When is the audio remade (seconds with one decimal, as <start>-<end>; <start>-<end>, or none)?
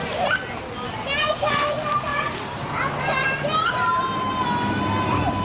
none